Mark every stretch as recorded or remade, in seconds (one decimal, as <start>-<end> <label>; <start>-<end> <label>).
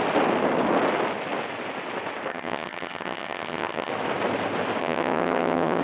0.0-2.3 recorded; 2.3-3.9 remade; 3.9-4.8 recorded; 4.8-5.8 remade